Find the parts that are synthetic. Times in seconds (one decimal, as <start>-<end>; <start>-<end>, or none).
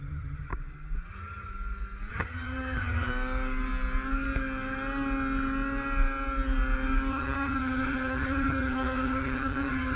0.0-0.5; 1.1-1.5; 2.1-3.1; 7.1-10.0